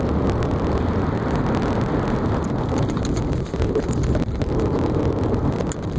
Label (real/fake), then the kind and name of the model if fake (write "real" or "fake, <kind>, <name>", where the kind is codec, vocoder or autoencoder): real